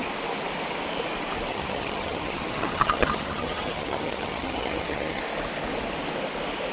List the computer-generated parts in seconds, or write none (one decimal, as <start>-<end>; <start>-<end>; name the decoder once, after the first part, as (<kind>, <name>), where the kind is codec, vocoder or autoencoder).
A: 1.5-5.2 (vocoder, HiFi-GAN)